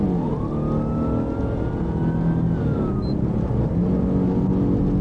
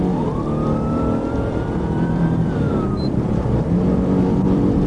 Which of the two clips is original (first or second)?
first